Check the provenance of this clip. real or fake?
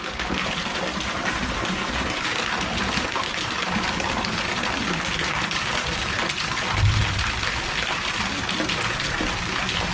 real